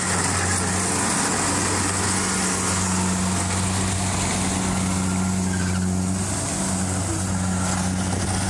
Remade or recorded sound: recorded